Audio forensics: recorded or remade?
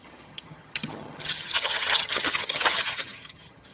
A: remade